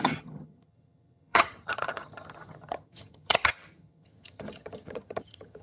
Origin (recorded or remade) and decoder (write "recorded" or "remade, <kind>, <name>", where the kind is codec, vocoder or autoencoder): remade, vocoder, HiFi-GAN